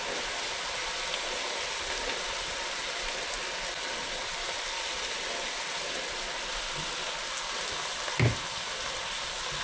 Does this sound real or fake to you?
real